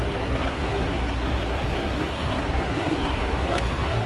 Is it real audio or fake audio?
fake